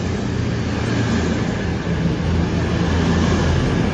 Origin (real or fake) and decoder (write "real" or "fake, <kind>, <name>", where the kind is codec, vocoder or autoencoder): real